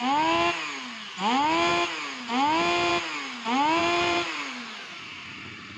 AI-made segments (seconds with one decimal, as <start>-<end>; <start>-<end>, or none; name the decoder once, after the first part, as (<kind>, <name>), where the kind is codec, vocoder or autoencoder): 3.8-5.8 (vocoder, BigVGAN v2)